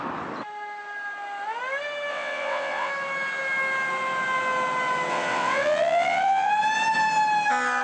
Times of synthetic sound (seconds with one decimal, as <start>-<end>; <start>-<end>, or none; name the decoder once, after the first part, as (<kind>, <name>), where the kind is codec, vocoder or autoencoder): 2.1-2.9 (vocoder, WaveNeXt); 5.1-6.5